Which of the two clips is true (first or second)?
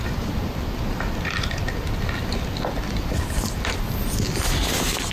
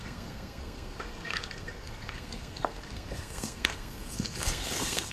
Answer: first